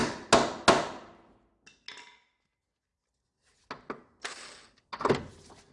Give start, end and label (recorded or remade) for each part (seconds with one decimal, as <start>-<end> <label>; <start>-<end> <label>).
0.0-5.7 recorded